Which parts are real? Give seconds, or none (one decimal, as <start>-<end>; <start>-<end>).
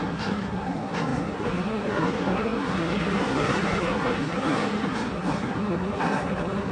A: none